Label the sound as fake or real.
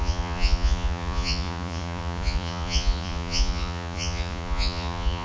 fake